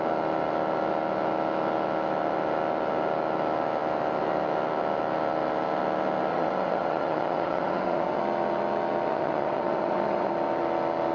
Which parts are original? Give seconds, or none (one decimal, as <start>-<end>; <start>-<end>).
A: 0.0-6.3; 8.2-9.1; 10.3-11.1